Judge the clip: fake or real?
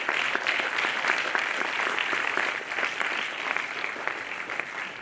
real